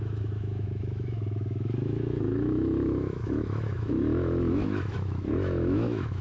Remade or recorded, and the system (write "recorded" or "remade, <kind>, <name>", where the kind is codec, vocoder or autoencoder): remade, autoencoder, DAC-VAE